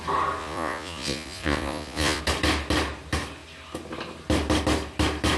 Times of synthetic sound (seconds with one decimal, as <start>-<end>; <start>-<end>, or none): 0.4-2.2